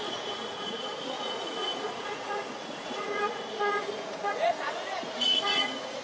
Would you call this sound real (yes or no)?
no